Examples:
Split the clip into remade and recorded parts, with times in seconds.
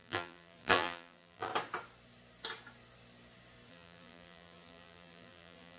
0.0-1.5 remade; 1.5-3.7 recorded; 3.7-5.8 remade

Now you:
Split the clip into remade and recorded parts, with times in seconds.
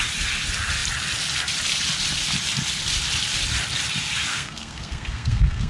0.0-4.3 recorded; 4.3-5.7 remade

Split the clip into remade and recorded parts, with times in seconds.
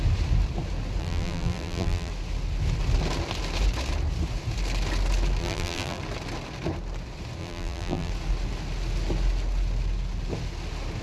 0.0-1.0 recorded; 1.0-2.1 remade; 2.1-5.4 recorded; 5.4-6.0 remade; 6.0-7.4 recorded; 7.4-8.1 remade; 8.1-11.0 recorded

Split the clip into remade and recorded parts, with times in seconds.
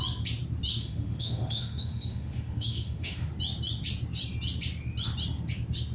0.0-0.7 recorded; 0.7-3.3 remade; 3.3-5.9 recorded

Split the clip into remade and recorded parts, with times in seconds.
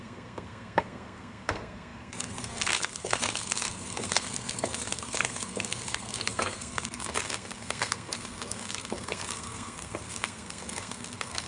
0.0-11.5 remade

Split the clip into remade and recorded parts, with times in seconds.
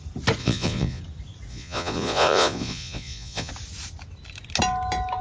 0.0-0.4 recorded; 0.4-1.0 remade; 1.0-1.5 recorded; 1.5-3.5 remade; 3.5-5.2 recorded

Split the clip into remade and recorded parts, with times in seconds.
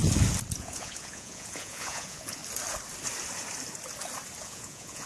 0.0-0.6 recorded; 0.6-2.4 remade; 2.4-4.4 recorded; 4.4-5.1 remade